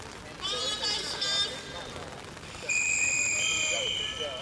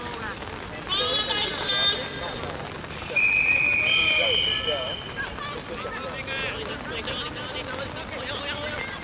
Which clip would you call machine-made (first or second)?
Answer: first